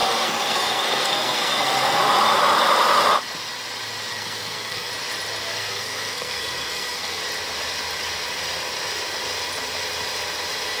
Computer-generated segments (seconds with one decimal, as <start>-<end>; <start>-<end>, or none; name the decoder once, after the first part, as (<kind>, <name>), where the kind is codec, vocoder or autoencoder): 0.0-2.0 (codec, SNAC); 4.1-4.9; 5.5-7.2